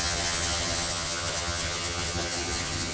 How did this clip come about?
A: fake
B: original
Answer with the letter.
A